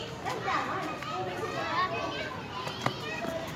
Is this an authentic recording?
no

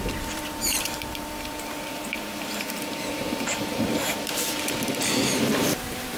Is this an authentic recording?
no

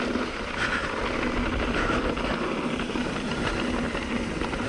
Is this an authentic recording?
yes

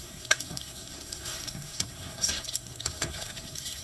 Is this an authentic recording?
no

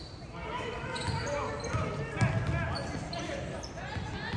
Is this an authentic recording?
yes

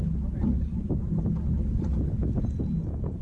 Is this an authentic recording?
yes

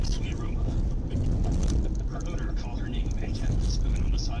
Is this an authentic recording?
yes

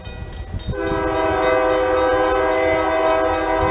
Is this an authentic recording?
yes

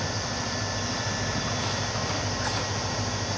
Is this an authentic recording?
yes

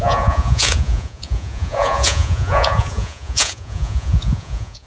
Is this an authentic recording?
no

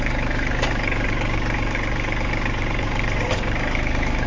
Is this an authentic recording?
no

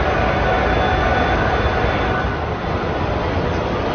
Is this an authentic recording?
yes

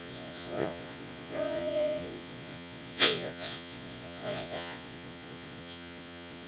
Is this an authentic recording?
no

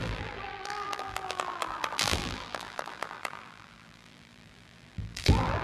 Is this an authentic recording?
no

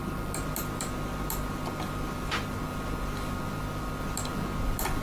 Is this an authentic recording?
yes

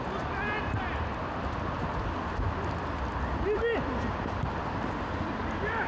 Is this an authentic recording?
yes